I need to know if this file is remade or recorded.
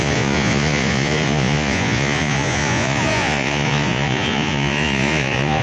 remade